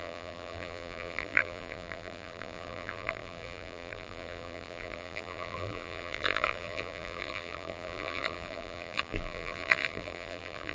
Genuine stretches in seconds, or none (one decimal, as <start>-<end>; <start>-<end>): none